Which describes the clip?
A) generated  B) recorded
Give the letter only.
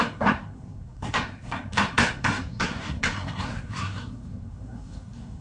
A